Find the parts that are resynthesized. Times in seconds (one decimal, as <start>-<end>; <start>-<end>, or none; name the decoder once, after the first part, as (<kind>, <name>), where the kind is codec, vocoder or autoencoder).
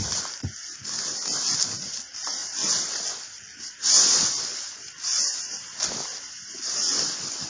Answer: none